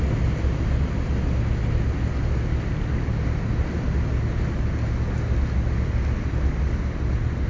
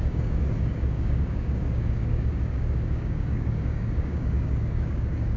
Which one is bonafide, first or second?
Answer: first